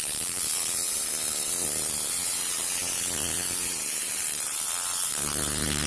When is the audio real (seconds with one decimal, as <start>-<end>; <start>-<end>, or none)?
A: none